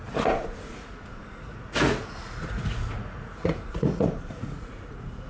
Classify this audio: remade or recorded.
remade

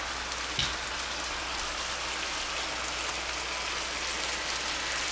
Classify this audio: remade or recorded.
recorded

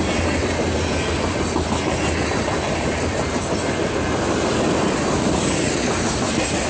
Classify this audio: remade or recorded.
recorded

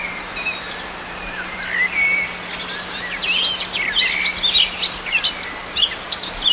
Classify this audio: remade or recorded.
recorded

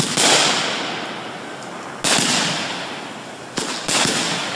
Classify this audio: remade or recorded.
recorded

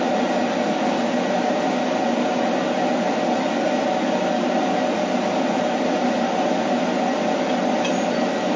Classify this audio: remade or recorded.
recorded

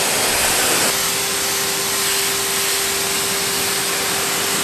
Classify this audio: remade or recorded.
recorded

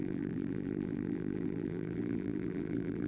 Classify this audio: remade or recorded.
remade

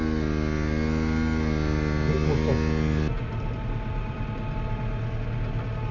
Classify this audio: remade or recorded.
recorded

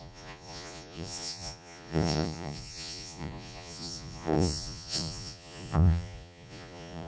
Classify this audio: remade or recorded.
remade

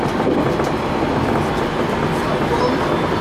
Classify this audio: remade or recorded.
recorded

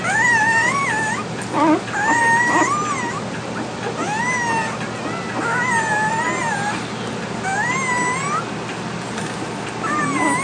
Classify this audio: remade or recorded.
recorded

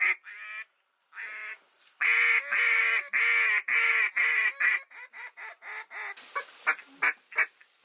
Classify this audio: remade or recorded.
recorded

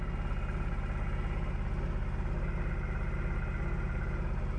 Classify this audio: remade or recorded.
recorded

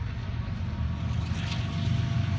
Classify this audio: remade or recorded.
recorded